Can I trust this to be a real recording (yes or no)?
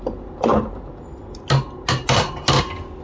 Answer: yes